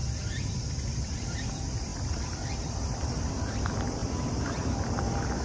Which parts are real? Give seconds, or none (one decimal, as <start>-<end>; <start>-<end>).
4.0-4.5